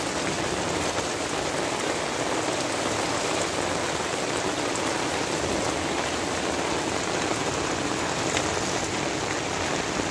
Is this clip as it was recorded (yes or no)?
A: yes